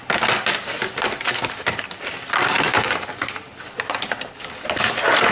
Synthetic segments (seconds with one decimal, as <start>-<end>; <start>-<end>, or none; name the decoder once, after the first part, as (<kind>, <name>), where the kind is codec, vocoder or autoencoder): none